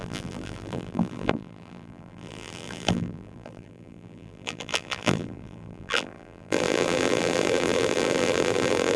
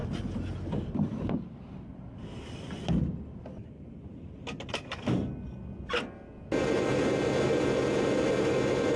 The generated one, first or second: first